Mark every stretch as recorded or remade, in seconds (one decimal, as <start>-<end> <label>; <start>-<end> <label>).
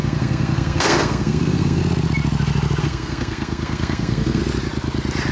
0.0-1.8 remade; 1.8-2.8 recorded; 2.8-4.4 remade; 4.4-5.3 recorded